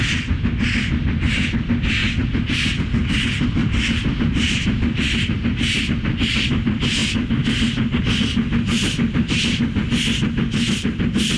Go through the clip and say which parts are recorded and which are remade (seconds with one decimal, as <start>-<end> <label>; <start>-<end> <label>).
0.0-2.0 recorded; 2.0-2.7 remade; 2.7-3.6 recorded; 3.6-5.8 remade; 5.8-11.4 recorded